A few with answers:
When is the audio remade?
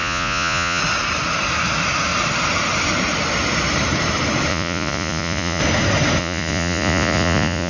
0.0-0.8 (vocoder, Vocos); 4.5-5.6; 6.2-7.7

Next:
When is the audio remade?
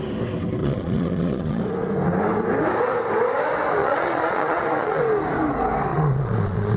0.6-1.6 (vocoder, Vocos); 3.8-5.0; 5.9-6.8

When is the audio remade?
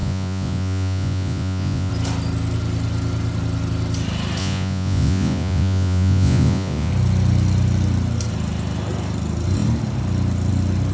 0.0-1.9 (vocoder, Vocos); 4.4-6.9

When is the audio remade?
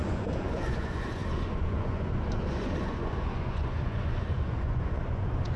0.0-5.6 (vocoder, Vocos)